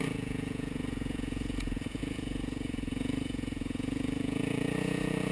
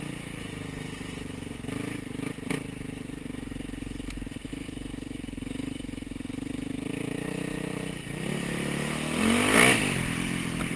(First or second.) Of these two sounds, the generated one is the first